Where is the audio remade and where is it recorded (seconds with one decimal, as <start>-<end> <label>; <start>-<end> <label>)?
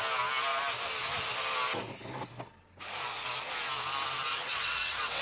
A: 0.0-4.3 recorded; 4.3-5.2 remade